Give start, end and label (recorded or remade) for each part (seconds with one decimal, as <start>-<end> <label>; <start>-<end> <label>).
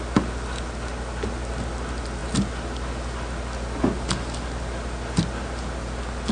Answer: 0.0-6.3 recorded